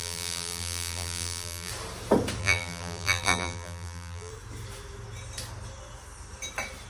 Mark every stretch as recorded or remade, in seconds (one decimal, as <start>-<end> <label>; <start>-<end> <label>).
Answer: 0.0-1.7 remade; 1.7-2.4 recorded; 2.4-4.3 remade; 4.3-6.9 recorded

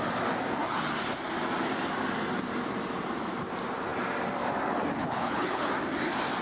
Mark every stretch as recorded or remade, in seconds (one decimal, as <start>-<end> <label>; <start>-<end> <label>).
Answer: 0.0-5.0 recorded; 5.0-5.7 remade; 5.7-6.4 recorded

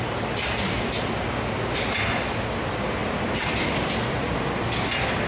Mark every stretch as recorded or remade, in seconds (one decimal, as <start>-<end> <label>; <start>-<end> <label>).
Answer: 0.0-5.3 recorded

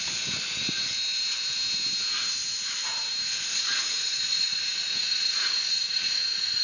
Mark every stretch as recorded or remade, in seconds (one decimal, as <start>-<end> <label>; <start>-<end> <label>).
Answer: 0.0-3.5 recorded; 3.5-6.6 remade

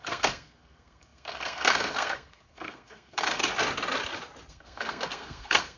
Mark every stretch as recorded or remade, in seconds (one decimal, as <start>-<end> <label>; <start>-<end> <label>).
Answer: 0.0-3.4 remade; 3.4-4.5 recorded; 4.5-5.8 remade

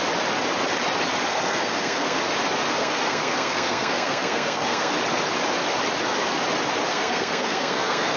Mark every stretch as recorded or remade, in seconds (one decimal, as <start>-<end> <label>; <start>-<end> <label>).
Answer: 0.0-1.3 recorded; 1.3-2.2 remade; 2.2-2.8 recorded; 2.8-4.9 remade; 4.9-6.9 recorded; 6.9-8.2 remade

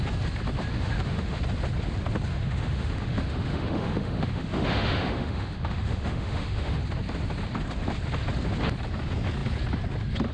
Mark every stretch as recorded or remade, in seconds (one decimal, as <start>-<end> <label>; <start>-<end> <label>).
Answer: 0.0-0.7 recorded; 0.7-1.4 remade; 1.4-2.3 recorded; 2.3-6.8 remade; 6.8-10.3 recorded

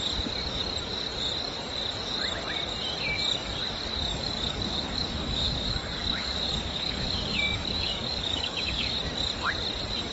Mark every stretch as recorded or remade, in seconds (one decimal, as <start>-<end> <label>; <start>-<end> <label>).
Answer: 0.0-4.1 recorded; 4.1-8.9 remade; 8.9-10.1 recorded